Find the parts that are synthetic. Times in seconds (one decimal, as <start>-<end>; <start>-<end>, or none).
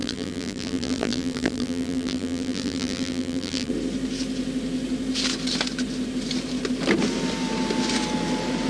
0.0-3.7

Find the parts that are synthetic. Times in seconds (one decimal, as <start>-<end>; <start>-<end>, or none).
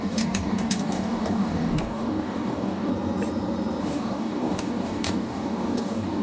0.0-2.9; 3.8-6.2